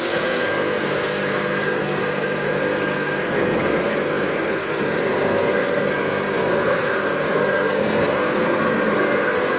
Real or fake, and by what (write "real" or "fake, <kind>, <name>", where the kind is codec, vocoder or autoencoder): fake, codec, SNAC